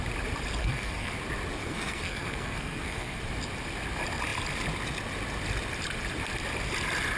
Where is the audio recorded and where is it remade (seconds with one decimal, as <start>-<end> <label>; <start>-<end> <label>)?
0.0-0.6 recorded; 0.6-1.1 remade; 1.1-1.6 recorded; 1.6-3.2 remade; 3.2-7.2 recorded